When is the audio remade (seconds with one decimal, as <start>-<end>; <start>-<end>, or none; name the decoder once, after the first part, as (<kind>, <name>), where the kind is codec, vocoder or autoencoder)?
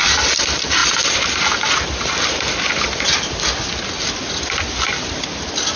none